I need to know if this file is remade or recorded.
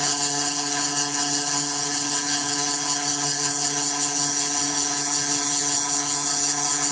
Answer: remade